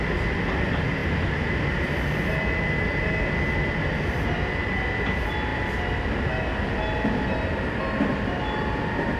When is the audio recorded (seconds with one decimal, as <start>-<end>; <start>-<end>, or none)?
0.0-9.2